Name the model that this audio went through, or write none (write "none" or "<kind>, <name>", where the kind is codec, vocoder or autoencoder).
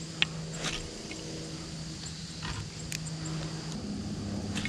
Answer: none